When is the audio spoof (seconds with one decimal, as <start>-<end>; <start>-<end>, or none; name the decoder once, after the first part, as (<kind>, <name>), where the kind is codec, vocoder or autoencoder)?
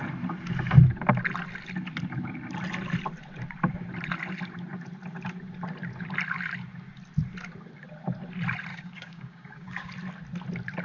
8.7-9.9 (codec, DAC)